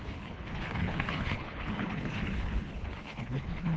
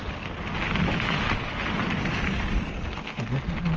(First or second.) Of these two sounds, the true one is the second